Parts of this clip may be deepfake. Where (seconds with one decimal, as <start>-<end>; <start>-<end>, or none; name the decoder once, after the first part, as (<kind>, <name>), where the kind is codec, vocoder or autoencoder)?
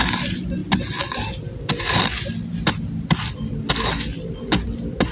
none